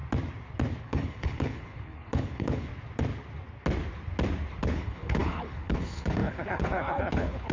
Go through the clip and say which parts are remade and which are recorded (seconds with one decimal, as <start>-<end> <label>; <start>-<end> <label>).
0.0-0.8 recorded; 0.8-2.7 remade; 2.7-4.6 recorded; 4.6-7.5 remade